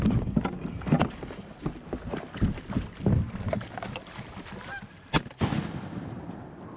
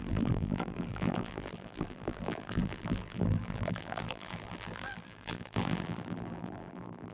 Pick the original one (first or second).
first